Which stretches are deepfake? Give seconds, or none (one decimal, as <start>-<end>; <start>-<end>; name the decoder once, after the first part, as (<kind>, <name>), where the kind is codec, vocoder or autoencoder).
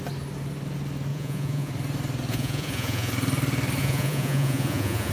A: 1.1-1.7 (vocoder, Vocos); 2.3-3.1; 3.8-5.1